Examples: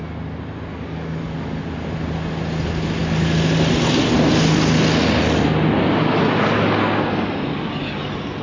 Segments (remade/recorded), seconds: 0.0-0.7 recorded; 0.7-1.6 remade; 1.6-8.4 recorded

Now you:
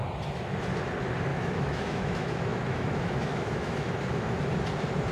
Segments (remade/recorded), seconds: 0.0-1.3 recorded; 1.3-4.4 remade; 4.4-5.1 recorded